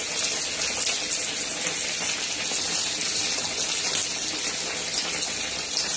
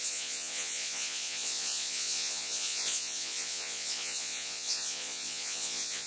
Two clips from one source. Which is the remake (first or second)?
second